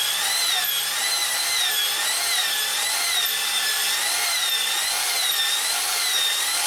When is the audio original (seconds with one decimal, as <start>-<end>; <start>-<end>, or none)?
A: 0.0-1.2; 1.7-2.7